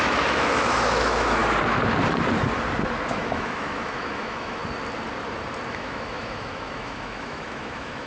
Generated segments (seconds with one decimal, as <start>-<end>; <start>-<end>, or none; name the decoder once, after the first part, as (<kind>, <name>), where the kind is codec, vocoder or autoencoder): 0.0-1.4 (autoencoder, DAC-VAE); 3.1-4.6; 5.7-8.1

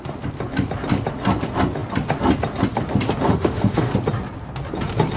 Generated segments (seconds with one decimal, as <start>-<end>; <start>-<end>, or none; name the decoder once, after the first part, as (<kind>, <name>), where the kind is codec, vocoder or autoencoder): 3.3-3.9 (autoencoder, DAC-VAE)

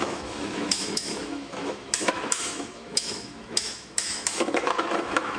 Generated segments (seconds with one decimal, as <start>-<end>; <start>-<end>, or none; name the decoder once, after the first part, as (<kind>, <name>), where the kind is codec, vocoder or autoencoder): 0.0-5.4 (autoencoder, DAC-VAE)

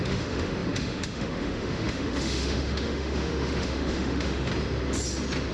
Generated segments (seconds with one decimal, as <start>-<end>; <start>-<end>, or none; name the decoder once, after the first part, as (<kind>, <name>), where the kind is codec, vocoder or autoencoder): 0.0-4.5 (autoencoder, DAC-VAE)

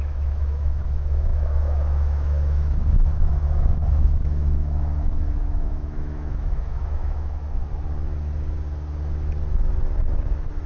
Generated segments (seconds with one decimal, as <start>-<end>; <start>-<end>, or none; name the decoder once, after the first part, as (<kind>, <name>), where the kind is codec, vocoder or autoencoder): 0.0-7.6 (autoencoder, DAC-VAE)

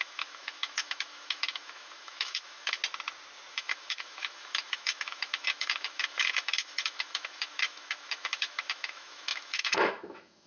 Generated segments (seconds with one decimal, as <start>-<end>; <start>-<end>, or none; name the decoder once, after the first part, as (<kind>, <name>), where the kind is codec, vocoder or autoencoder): 0.0-2.8 (autoencoder, DAC-VAE); 3.5-10.5

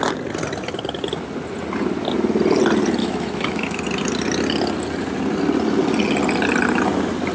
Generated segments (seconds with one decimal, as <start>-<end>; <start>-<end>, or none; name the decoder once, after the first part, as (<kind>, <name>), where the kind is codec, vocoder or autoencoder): 3.0-3.8 (autoencoder, DAC-VAE)